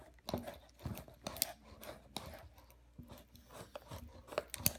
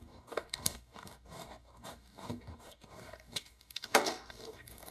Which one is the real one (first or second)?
first